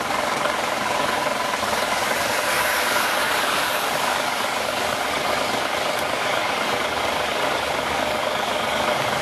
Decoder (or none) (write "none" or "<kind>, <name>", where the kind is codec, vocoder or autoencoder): codec, DAC